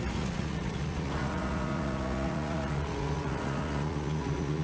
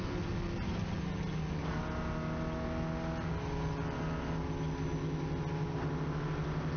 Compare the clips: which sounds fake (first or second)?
first